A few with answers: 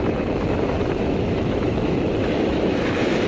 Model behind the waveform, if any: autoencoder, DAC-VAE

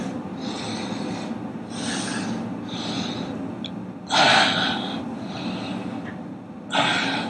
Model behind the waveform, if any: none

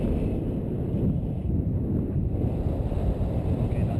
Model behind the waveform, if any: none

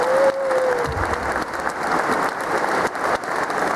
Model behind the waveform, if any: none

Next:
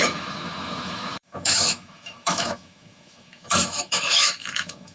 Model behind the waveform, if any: autoencoder, DAC-VAE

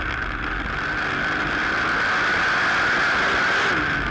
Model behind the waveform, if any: none